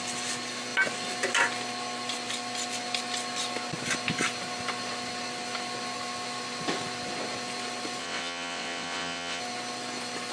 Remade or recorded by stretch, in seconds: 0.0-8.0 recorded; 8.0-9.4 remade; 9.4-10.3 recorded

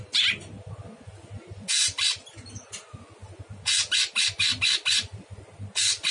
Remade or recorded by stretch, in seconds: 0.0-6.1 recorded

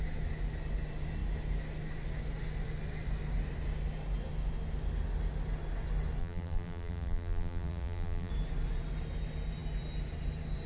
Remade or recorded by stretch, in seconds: 0.0-6.2 recorded; 6.2-8.3 remade; 8.3-10.7 recorded

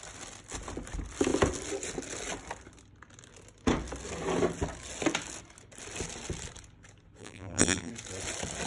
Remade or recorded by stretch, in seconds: 0.0-7.2 recorded; 7.2-7.9 remade; 7.9-8.7 recorded

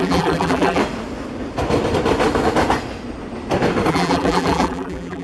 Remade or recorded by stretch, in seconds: 0.0-0.8 remade; 0.8-3.9 recorded; 3.9-5.2 remade

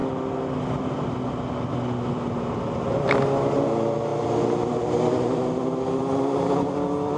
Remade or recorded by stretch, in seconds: 0.0-7.2 recorded